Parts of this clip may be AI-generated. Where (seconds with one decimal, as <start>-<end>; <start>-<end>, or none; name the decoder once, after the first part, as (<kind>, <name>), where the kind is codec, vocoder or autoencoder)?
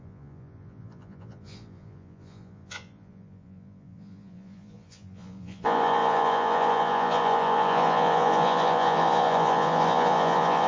0.0-10.7 (vocoder, Vocos)